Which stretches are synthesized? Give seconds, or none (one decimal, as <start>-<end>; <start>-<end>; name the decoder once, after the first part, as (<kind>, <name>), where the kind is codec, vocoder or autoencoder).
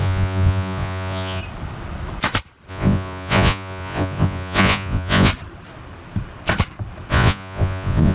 0.0-1.4 (vocoder, Vocos); 2.7-5.3; 7.1-8.1